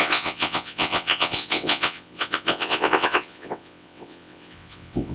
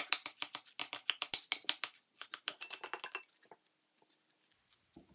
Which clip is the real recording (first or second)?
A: second